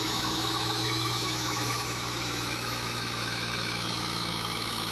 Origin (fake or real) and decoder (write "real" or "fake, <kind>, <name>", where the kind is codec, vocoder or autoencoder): fake, autoencoder, DAC-VAE